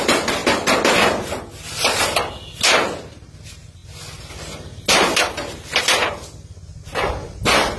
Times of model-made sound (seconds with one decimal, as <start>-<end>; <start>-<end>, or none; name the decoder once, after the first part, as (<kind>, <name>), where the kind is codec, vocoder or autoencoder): none